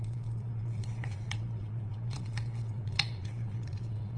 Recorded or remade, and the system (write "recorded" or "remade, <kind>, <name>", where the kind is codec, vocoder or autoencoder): remade, vocoder, Vocos